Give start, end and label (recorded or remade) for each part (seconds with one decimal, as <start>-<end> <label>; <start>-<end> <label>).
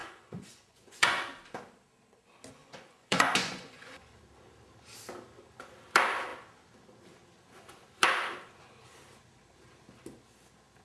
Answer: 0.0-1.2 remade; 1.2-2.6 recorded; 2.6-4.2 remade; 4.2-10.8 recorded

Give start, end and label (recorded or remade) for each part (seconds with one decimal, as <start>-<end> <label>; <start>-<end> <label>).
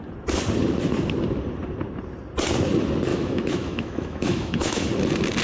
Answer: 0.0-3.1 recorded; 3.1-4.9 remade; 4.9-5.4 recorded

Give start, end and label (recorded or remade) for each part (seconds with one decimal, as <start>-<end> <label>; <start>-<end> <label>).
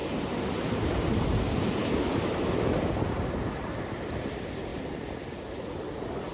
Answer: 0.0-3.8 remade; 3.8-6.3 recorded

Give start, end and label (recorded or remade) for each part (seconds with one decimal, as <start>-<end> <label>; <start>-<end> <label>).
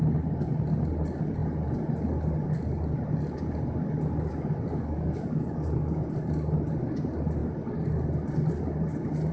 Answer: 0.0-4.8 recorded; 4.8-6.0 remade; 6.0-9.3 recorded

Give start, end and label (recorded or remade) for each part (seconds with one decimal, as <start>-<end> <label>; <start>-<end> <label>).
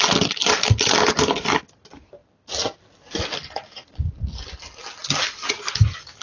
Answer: 0.0-6.2 recorded